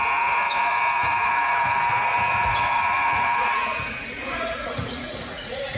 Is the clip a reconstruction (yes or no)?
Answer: yes